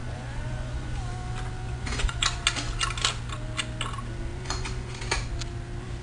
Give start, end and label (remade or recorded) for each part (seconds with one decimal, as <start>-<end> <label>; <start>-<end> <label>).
0.0-1.1 remade; 1.1-1.7 recorded; 1.7-2.4 remade; 2.4-4.3 recorded; 4.3-5.0 remade; 5.0-6.0 recorded